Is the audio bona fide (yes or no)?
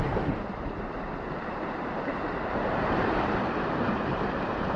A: no